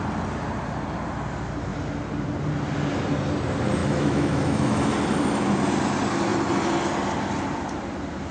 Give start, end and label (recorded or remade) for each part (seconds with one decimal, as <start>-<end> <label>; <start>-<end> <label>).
0.0-3.8 recorded; 3.8-4.9 remade; 4.9-8.3 recorded